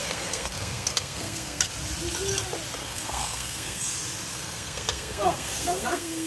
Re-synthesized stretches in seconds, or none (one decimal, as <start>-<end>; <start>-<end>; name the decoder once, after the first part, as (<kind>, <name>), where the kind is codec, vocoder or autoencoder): 0.0-1.7 (codec, SNAC); 2.8-3.9; 4.3-6.3